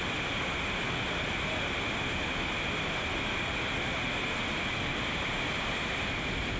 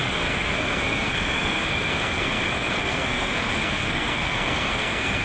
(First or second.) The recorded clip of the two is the first